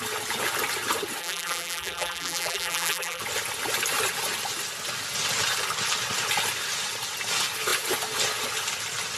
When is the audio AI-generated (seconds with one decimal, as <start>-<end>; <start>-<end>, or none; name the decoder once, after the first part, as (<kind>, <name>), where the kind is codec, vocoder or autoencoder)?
1.2-3.2 (vocoder, BigVGAN v2)